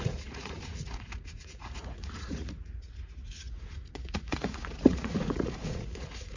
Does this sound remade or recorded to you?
remade